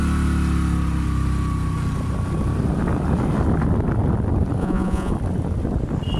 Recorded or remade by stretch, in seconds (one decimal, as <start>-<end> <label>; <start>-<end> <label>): 0.0-4.6 recorded; 4.6-5.1 remade; 5.1-6.2 recorded